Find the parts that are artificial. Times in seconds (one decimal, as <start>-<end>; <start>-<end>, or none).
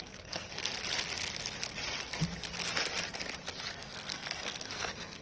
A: 0.0-0.6; 3.7-5.2